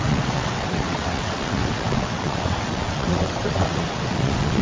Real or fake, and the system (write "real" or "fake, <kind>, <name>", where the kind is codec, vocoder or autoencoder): fake, vocoder, WaveNeXt